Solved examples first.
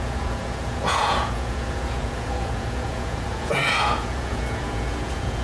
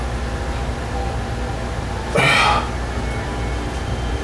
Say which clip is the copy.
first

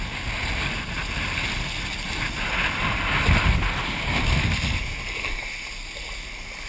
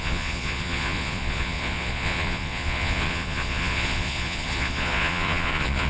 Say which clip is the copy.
second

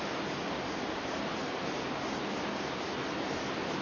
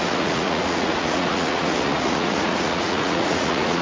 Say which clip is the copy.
second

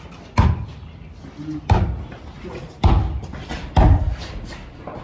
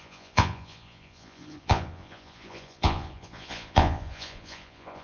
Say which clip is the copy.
second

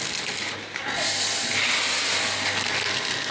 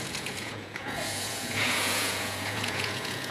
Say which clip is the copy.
second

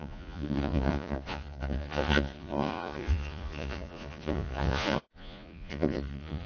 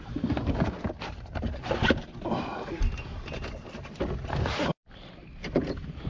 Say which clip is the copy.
first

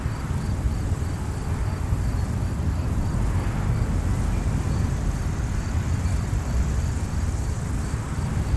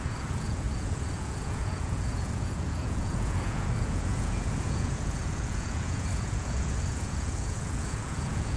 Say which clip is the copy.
second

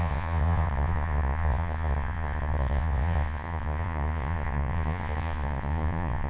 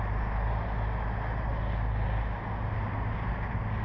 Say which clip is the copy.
first